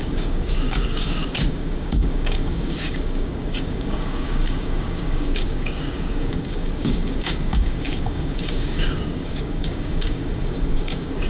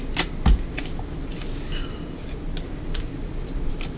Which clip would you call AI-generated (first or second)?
first